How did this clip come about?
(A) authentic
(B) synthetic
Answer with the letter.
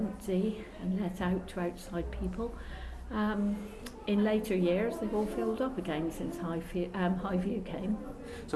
A